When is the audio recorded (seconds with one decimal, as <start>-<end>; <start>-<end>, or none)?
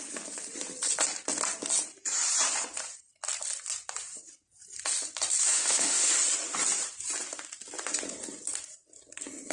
0.0-5.4; 6.1-9.5